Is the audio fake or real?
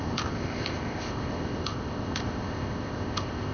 fake